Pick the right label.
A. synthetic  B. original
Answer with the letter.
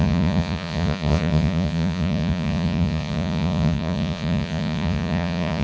A